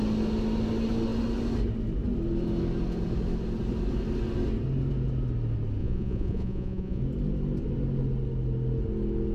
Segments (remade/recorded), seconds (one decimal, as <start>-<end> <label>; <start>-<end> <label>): 0.0-5.8 recorded; 5.8-7.0 remade; 7.0-9.3 recorded